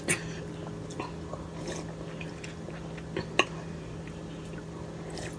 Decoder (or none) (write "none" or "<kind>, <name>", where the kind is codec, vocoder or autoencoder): none